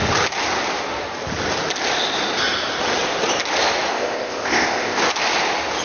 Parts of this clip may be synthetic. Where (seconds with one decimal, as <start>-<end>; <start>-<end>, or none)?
3.9-5.0